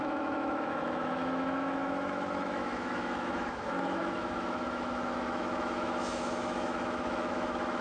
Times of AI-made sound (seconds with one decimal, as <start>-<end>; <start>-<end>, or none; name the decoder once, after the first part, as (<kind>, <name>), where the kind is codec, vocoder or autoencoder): 0.0-7.8 (autoencoder, DAC-VAE)